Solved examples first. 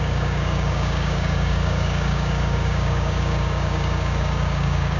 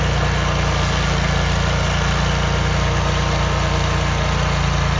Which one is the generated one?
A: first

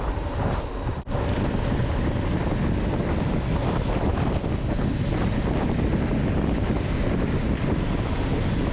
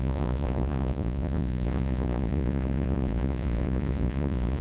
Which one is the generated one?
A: second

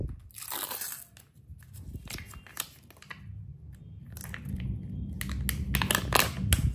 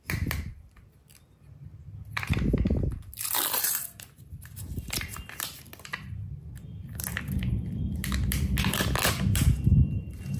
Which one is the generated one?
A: second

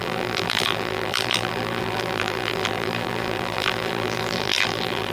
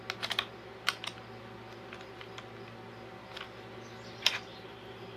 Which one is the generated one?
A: first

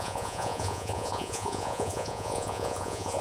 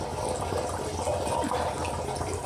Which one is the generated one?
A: first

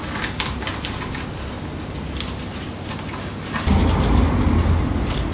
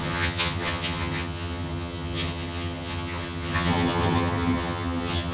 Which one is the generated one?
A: second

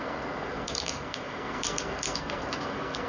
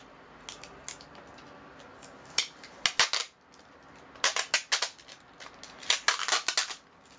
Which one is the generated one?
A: first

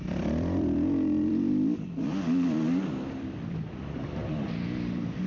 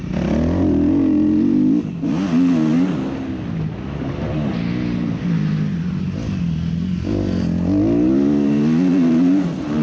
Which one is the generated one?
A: first